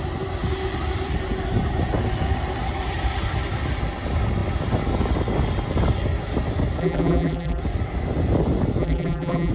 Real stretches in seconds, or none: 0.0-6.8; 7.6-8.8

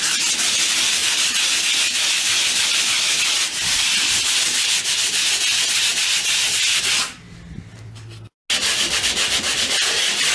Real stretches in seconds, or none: 0.0-1.0; 4.1-10.3